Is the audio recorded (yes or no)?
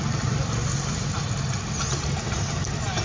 yes